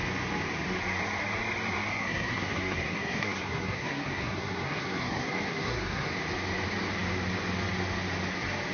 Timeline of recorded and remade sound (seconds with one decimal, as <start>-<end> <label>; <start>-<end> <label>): 0.0-1.9 recorded; 1.9-6.1 remade; 6.1-8.7 recorded

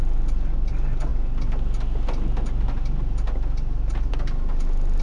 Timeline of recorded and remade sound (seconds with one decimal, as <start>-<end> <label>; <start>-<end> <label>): 0.0-5.0 recorded